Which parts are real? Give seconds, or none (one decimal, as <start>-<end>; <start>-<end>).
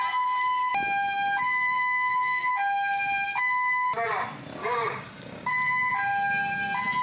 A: 0.0-4.6; 5.5-7.0